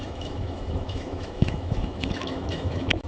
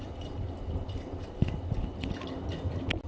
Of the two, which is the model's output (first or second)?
first